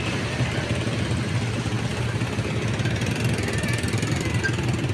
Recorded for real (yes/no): yes